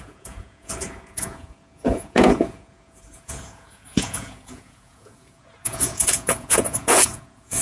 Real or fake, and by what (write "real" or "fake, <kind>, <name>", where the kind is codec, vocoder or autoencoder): fake, vocoder, Vocos